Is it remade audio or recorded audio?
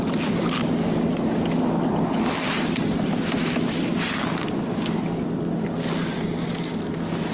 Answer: recorded